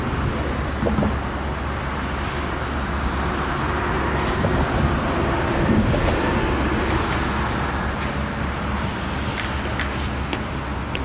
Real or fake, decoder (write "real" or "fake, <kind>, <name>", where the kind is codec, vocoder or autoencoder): real